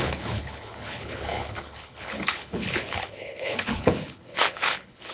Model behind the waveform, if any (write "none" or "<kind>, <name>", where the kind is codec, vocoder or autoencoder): codec, HILCodec